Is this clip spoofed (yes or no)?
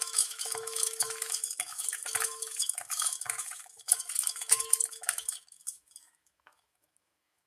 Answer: yes